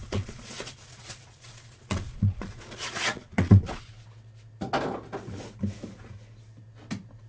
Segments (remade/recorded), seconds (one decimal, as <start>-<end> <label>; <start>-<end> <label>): 0.0-3.9 remade; 3.9-7.3 recorded